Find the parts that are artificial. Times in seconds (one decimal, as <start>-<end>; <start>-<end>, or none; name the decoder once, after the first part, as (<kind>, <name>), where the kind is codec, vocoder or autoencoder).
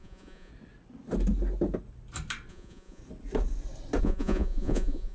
0.0-0.5 (vocoder, Vocos); 2.5-3.0; 4.0-5.1